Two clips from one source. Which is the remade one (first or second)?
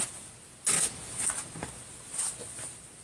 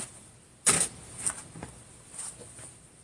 second